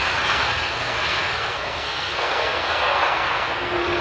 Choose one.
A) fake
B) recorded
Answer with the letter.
A